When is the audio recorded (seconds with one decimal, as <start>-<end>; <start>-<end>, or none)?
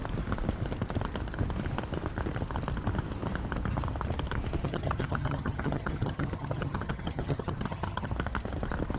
0.0-4.6; 8.1-9.0